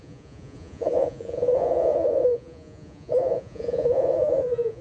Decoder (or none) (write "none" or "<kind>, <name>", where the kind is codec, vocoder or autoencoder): vocoder, Vocos